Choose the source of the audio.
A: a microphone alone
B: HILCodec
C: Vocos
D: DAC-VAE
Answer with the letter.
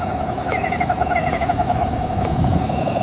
D